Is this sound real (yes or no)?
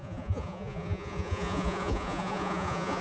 no